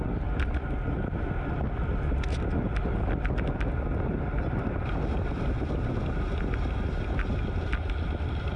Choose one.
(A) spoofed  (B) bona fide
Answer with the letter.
B